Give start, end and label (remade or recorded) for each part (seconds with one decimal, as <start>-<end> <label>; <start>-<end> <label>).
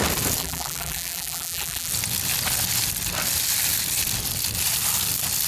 0.0-0.4 recorded; 0.4-1.9 remade; 1.9-5.5 recorded